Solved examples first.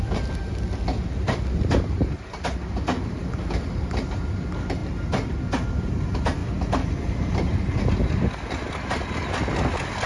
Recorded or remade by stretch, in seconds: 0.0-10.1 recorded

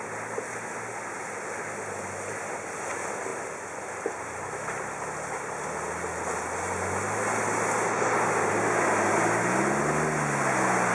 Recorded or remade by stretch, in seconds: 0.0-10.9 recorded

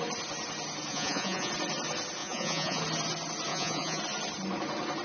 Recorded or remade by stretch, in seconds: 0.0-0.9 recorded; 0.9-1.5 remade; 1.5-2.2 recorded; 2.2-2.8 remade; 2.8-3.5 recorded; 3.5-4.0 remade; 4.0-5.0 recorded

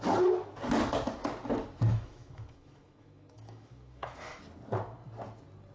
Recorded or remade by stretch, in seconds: 0.0-1.9 recorded; 1.9-4.4 remade; 4.4-5.7 recorded

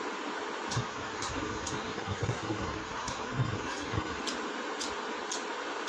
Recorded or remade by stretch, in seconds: 0.0-0.7 recorded; 0.7-4.2 remade; 4.2-5.9 recorded

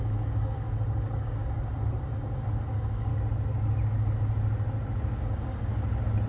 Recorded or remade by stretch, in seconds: 0.0-3.1 remade; 3.1-5.2 recorded; 5.2-5.7 remade; 5.7-6.3 recorded